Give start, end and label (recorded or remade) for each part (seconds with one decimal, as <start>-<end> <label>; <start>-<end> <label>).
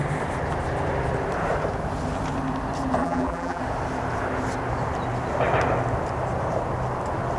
0.0-3.0 recorded; 3.0-3.6 remade; 3.6-7.4 recorded